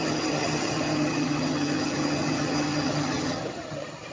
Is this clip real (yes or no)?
no